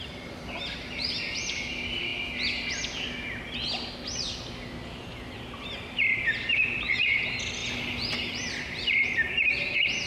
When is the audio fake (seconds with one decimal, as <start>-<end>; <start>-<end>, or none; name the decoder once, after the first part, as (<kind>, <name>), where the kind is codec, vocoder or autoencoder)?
0.0-2.1 (vocoder, BigVGAN v2); 5.3-7.6; 9.3-10.1